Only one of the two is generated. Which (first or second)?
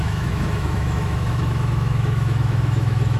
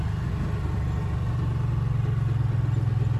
first